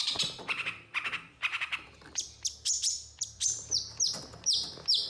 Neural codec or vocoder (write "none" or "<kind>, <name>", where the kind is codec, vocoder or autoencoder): vocoder, BigVGAN v2